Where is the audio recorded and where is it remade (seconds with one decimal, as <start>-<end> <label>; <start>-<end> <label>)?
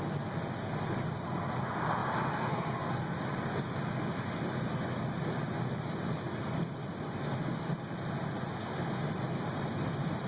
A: 0.0-10.3 recorded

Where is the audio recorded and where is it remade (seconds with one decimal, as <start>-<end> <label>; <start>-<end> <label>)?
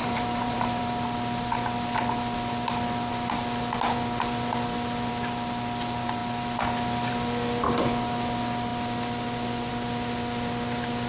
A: 0.0-0.8 remade; 0.8-11.1 recorded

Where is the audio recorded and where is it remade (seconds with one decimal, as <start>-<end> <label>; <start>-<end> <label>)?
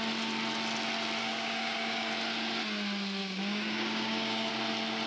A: 0.0-1.2 recorded; 1.2-2.1 remade; 2.1-3.2 recorded; 3.2-4.5 remade; 4.5-5.1 recorded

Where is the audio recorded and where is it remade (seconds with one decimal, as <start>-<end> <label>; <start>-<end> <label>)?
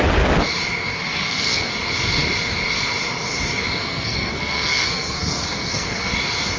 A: 0.0-0.9 recorded; 0.9-1.7 remade; 1.7-3.8 recorded; 3.8-6.1 remade; 6.1-6.6 recorded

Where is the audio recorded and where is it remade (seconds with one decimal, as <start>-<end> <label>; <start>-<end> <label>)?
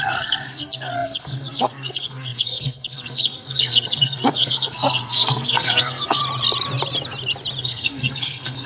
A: 0.0-6.2 remade; 6.2-7.6 recorded; 7.6-8.7 remade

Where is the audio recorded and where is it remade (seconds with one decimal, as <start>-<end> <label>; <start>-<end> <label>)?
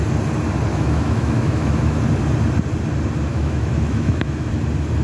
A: 0.0-0.7 recorded; 0.7-2.0 remade; 2.0-3.3 recorded; 3.3-4.5 remade; 4.5-5.0 recorded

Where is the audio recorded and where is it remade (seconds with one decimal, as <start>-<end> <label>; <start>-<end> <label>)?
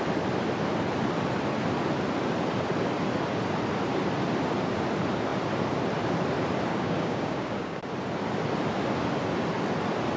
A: 0.0-6.7 recorded; 6.7-7.8 remade; 7.8-10.2 recorded